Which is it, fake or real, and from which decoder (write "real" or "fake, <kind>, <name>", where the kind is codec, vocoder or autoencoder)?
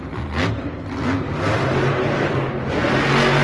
real